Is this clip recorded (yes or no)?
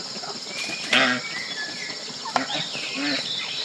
yes